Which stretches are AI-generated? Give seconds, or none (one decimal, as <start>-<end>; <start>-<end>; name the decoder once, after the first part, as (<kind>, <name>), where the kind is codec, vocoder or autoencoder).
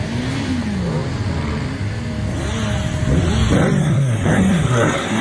3.8-5.2 (codec, SNAC)